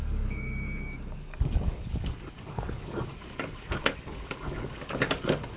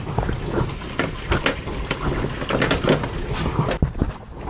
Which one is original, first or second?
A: second